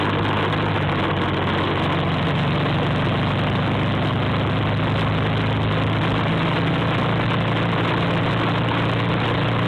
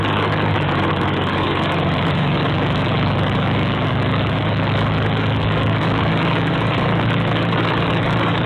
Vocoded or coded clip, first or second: second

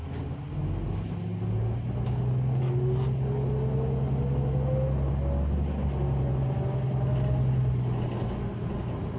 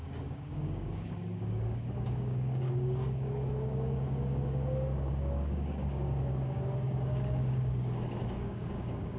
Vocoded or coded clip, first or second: second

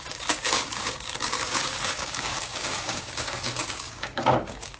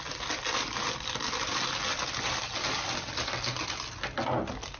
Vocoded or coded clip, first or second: first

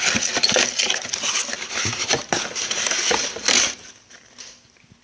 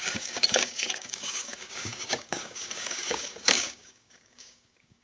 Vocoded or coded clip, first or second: second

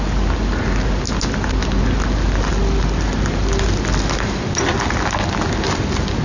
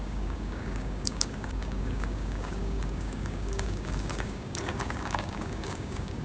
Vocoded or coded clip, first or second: second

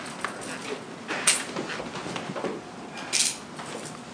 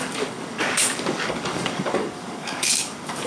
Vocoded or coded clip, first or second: second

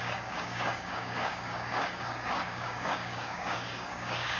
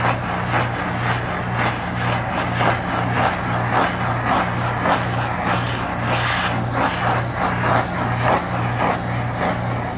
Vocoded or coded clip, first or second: first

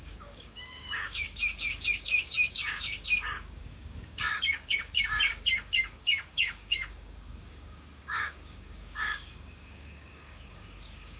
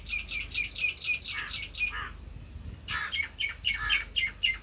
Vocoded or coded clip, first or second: first